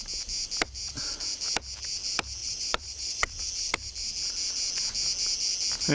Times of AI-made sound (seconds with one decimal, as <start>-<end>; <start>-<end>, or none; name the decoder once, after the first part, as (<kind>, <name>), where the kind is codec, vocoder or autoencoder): 2.4-3.4 (vocoder, WaveNeXt)